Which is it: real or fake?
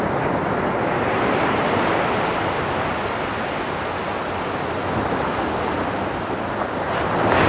real